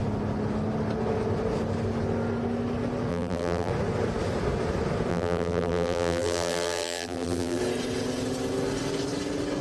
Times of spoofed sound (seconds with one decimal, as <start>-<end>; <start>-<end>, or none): 3.1-3.7; 5.1-7.6